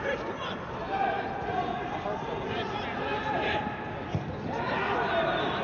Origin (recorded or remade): recorded